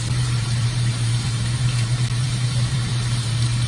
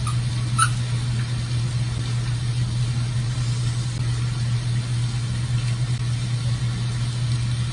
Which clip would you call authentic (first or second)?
second